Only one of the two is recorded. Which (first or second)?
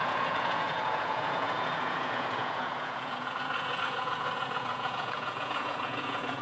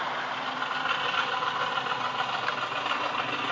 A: second